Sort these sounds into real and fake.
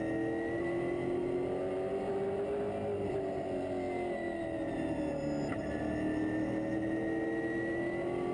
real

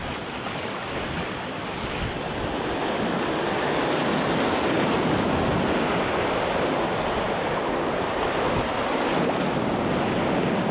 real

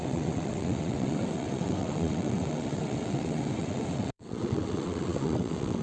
fake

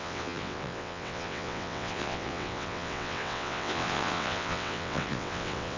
fake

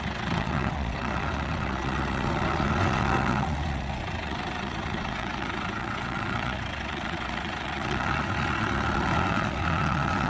fake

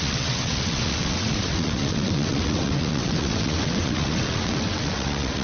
fake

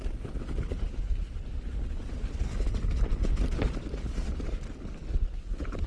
real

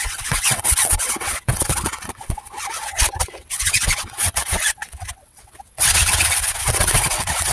fake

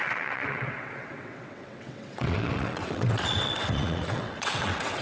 fake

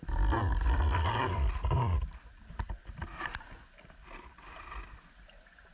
real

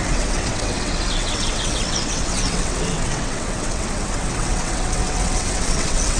fake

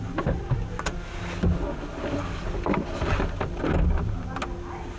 real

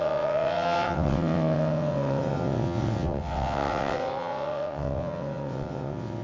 fake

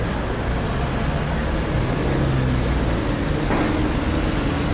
real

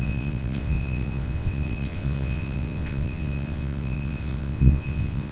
fake